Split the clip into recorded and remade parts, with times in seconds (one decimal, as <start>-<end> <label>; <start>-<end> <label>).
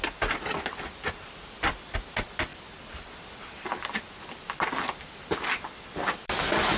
0.0-6.8 recorded